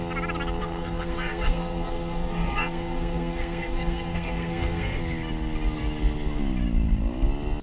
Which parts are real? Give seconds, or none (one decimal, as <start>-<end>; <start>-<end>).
0.0-0.6; 5.0-7.6